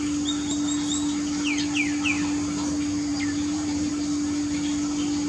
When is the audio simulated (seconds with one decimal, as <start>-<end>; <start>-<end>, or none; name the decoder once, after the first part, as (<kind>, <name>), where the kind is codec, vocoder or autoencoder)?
3.1-3.9 (vocoder, BigVGAN v2)